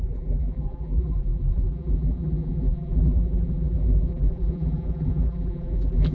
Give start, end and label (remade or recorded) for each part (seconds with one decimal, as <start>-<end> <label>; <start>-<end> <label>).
0.0-6.1 remade